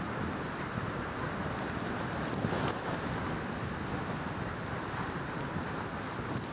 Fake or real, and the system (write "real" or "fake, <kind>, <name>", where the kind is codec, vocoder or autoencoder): real